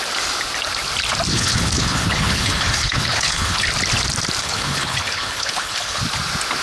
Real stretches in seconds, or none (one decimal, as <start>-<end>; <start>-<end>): 0.0-1.3; 3.7-4.4; 6.0-6.6